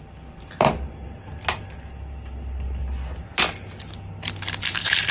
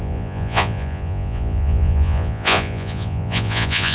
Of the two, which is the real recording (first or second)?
first